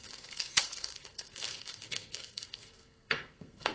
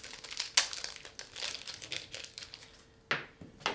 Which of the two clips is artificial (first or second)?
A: first